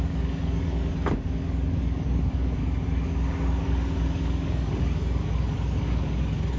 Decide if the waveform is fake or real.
fake